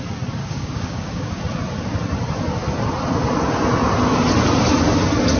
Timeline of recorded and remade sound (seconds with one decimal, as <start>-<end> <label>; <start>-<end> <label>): 0.0-0.4 recorded; 0.4-1.4 remade; 1.4-5.4 recorded